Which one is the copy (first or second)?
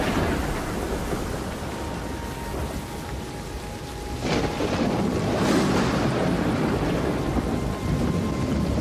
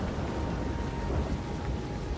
second